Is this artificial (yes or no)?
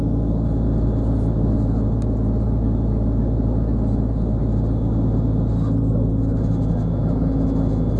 no